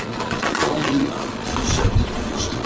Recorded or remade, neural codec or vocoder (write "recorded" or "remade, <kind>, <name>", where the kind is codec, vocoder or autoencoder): remade, vocoder, Vocos